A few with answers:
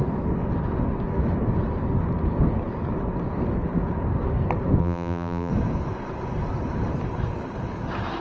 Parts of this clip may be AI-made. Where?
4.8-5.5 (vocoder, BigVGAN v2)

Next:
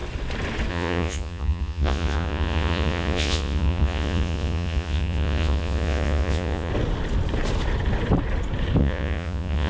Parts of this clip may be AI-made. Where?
0.7-6.7 (vocoder, Vocos); 8.8-9.7

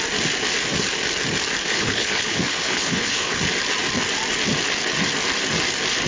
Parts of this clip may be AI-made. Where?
1.7-3.4 (codec, HILCodec)

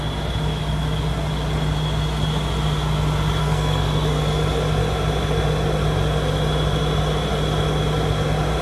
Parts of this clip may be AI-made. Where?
3.4-4.2 (codec, SNAC)

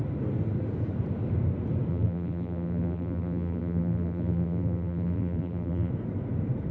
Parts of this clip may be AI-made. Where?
1.9-5.9 (vocoder, BigVGAN v2)

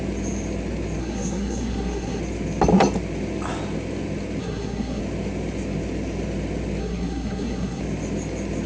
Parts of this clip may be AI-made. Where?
1.0-2.2 (codec, SNAC); 4.4-5.0; 6.8-7.8